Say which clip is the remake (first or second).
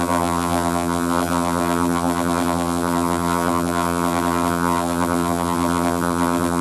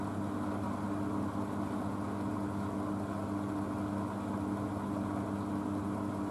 first